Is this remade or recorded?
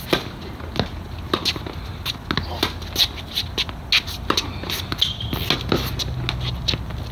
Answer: recorded